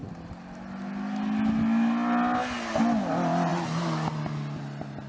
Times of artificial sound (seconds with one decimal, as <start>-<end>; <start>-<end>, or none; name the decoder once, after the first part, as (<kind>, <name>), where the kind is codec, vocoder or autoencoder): none